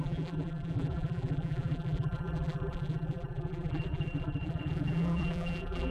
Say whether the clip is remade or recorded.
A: remade